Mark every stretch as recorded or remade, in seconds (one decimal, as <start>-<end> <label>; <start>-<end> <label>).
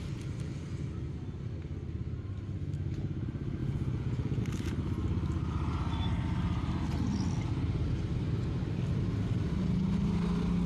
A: 0.0-3.6 recorded; 3.6-4.4 remade; 4.4-10.7 recorded